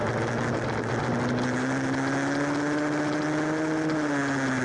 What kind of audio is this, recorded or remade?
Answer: recorded